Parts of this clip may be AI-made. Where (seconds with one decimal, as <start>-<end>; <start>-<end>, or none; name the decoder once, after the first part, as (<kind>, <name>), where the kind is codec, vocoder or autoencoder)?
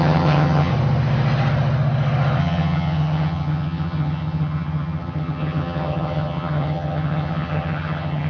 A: 0.0-0.7 (vocoder, HiFi-GAN); 2.4-8.3